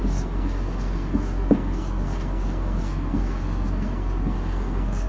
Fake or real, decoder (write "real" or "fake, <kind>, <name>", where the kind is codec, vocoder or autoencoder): fake, codec, SNAC